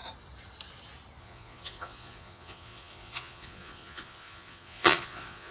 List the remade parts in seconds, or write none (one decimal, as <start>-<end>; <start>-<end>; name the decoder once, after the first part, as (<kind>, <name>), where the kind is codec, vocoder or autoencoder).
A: 1.2-5.5 (vocoder, Vocos)